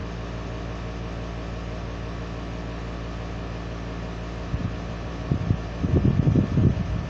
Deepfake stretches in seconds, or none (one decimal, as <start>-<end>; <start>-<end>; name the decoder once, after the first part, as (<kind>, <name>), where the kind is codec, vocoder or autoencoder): none